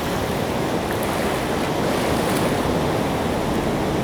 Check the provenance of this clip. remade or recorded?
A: recorded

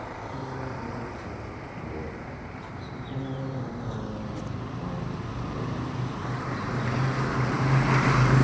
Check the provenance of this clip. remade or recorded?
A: remade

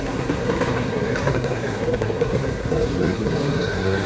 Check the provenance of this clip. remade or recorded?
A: remade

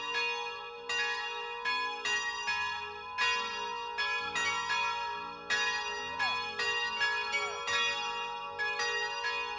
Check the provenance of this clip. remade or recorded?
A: recorded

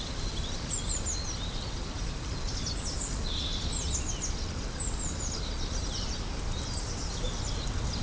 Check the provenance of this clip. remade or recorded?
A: recorded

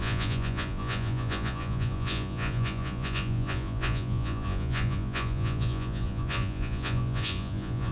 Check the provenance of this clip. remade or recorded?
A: remade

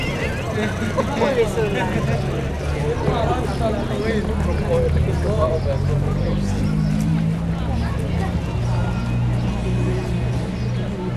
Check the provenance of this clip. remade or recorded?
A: recorded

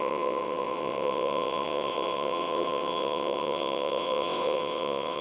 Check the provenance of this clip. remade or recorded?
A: remade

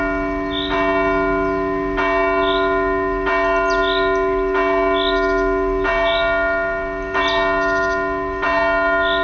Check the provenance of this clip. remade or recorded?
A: recorded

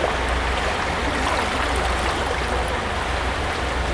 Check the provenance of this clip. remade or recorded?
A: recorded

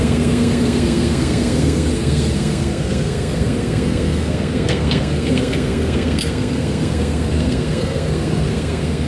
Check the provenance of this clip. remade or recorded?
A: remade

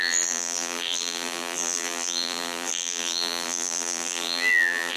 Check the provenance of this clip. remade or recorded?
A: remade